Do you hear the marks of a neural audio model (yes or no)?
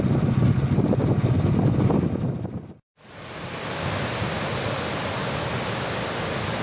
no